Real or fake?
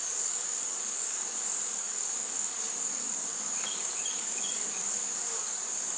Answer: fake